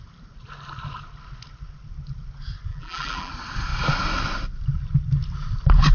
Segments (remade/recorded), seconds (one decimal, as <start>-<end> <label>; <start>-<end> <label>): 0.0-2.7 recorded; 2.7-3.3 remade; 3.3-5.9 recorded